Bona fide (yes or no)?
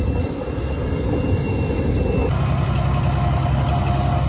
yes